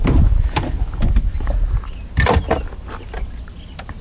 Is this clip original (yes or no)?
yes